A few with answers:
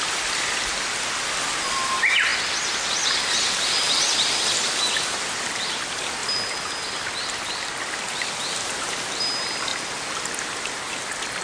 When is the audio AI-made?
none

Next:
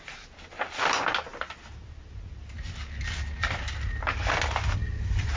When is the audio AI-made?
none

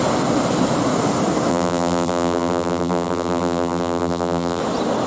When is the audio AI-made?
1.5-4.6 (vocoder, BigVGAN v2)

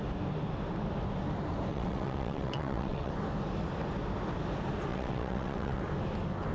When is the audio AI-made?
1.7-3.1 (vocoder, WaveNeXt); 4.9-5.8

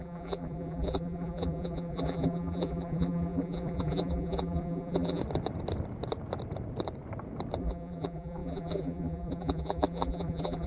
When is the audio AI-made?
0.0-5.2 (vocoder, BigVGAN v2); 7.6-10.7

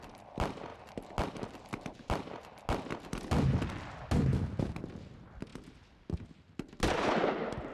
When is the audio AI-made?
none

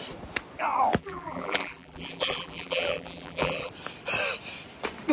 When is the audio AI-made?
1.0-3.7 (vocoder, BigVGAN v2)